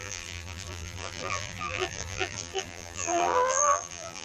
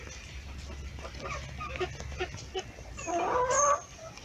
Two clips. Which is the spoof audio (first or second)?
first